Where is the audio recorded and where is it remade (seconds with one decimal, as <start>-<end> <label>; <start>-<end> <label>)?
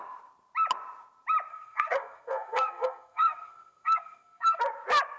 0.0-1.5 recorded; 1.5-4.6 remade; 4.6-5.2 recorded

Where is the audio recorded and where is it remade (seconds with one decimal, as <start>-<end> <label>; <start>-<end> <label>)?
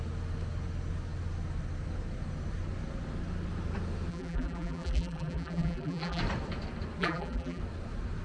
0.0-4.1 recorded; 4.1-6.2 remade; 6.2-7.0 recorded; 7.0-7.6 remade; 7.6-8.2 recorded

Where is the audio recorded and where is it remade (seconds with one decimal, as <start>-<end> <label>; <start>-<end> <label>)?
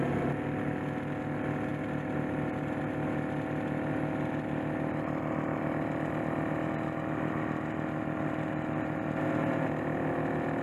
0.0-10.6 recorded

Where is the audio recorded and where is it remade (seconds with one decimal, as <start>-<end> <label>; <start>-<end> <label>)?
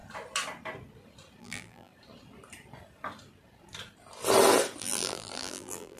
0.0-1.4 recorded; 1.4-1.9 remade; 1.9-4.8 recorded; 4.8-6.0 remade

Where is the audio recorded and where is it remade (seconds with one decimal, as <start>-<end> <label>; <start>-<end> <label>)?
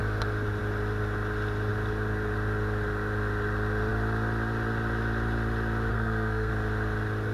0.0-5.9 recorded; 5.9-6.5 remade; 6.5-7.3 recorded